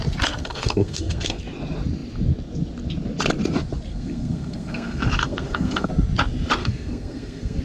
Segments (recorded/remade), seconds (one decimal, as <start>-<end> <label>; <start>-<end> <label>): 0.0-0.4 recorded; 0.4-1.4 remade; 1.4-3.9 recorded; 3.9-5.9 remade; 5.9-6.6 recorded; 6.6-7.6 remade